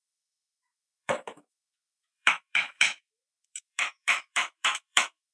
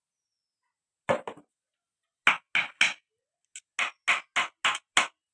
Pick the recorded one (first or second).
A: second